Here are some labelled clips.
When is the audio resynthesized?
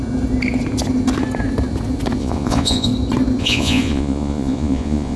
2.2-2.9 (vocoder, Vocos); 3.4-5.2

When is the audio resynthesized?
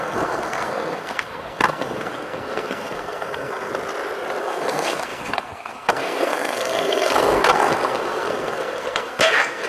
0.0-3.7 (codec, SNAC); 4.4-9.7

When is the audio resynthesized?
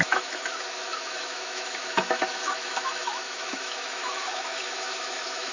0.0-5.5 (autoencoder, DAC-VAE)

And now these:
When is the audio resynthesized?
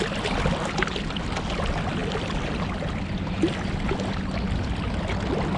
none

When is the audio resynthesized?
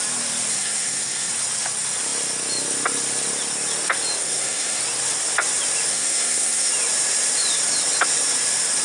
0.5-1.3 (codec, SNAC); 4.2-4.8; 5.9-6.7